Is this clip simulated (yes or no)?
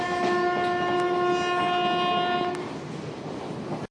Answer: no